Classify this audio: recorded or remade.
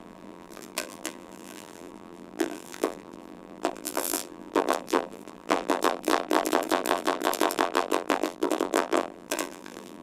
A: remade